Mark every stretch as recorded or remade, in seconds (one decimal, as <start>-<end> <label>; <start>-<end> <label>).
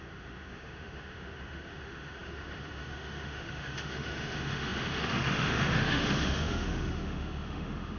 0.0-8.0 remade